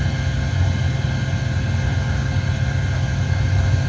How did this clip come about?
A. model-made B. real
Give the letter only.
B